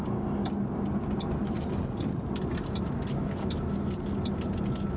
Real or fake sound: real